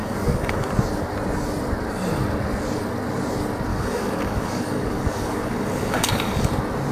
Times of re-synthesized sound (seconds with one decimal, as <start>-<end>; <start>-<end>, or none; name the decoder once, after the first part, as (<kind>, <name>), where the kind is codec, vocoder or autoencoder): 0.0-0.7 (codec, DAC); 3.7-6.5